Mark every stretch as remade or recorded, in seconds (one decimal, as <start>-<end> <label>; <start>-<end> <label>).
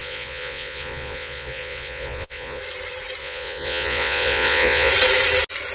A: 0.0-2.6 remade; 2.6-3.2 recorded; 3.2-4.9 remade; 4.9-5.7 recorded